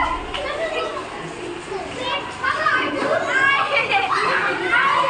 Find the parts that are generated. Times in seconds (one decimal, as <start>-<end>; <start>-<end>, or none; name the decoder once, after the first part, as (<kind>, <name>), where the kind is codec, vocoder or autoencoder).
none

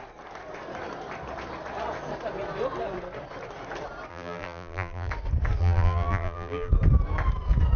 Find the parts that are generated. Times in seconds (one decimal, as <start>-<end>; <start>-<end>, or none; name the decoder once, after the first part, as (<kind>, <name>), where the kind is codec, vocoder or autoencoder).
4.1-5.1 (vocoder, BigVGAN v2); 5.6-6.7

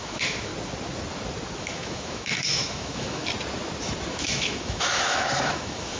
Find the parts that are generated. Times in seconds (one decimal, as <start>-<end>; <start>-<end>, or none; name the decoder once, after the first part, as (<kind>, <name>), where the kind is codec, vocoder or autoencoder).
0.0-0.5 (autoencoder, DAC-VAE); 1.6-3.2; 4.1-6.0

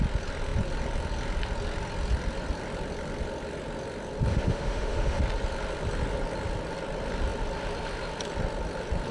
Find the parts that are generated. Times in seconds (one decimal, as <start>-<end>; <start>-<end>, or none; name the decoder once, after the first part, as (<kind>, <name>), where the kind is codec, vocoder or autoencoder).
4.3-5.2 (autoencoder, DAC-VAE)

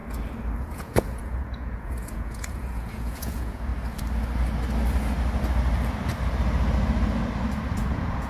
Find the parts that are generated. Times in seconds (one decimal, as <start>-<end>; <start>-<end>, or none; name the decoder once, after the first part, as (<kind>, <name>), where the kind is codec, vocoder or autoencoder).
0.6-3.7 (vocoder, Vocos); 7.9-8.3

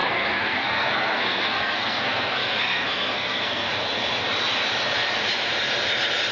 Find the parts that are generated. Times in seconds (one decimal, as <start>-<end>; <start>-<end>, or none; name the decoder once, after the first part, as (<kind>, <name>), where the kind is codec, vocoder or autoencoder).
0.0-3.7 (codec, SNAC)